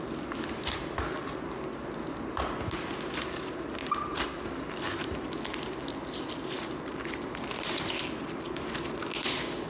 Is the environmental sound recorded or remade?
recorded